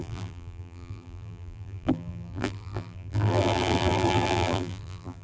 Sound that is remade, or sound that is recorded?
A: remade